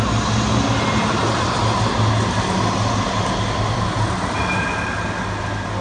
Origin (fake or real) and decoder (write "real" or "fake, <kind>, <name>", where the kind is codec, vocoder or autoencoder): real